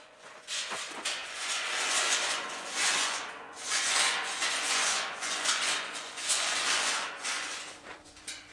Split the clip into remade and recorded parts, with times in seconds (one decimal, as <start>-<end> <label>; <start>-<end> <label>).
0.0-8.5 remade